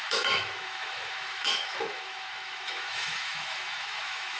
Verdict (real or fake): fake